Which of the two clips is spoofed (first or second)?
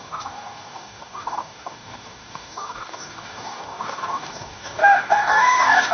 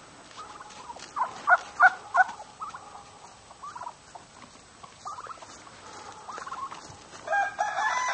first